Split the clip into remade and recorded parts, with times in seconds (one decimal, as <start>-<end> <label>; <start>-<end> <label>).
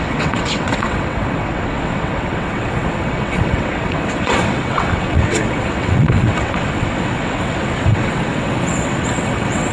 0.0-9.7 remade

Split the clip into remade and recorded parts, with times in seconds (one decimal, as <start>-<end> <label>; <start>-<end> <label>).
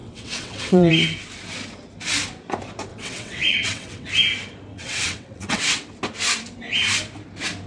0.0-0.9 remade; 0.9-2.9 recorded; 2.9-4.1 remade; 4.1-4.7 recorded; 4.7-5.9 remade; 5.9-7.7 recorded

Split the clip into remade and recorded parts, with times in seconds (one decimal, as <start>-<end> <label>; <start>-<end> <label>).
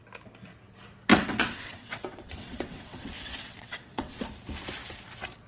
0.0-1.1 recorded; 1.1-4.2 remade; 4.2-5.5 recorded